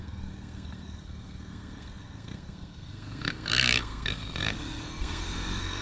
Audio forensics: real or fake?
fake